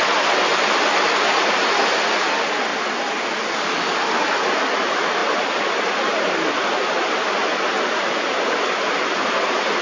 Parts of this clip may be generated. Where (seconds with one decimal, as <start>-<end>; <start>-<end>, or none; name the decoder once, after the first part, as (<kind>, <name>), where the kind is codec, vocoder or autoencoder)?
none